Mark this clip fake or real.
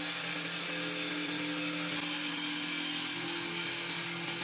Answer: real